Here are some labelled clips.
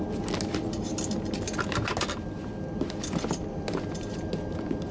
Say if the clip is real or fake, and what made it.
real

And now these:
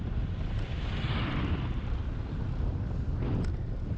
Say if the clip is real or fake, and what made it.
real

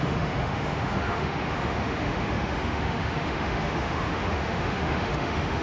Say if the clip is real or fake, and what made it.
fake, autoencoder, DAC-VAE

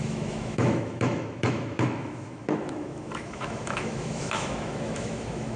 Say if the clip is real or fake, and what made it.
fake, autoencoder, DAC-VAE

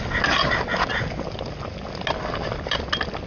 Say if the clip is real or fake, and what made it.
real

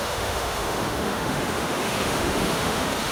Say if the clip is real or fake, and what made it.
fake, autoencoder, DAC-VAE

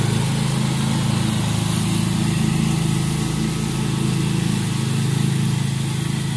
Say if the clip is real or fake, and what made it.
real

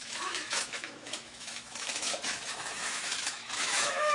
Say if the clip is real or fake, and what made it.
fake, autoencoder, DAC-VAE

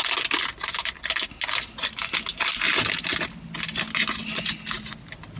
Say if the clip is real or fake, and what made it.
real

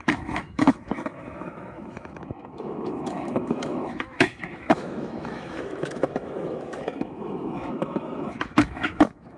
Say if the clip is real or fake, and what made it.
fake, autoencoder, DAC-VAE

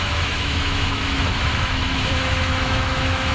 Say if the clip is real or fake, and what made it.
fake, autoencoder, DAC-VAE